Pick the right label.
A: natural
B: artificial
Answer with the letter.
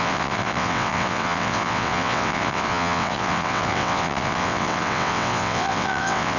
B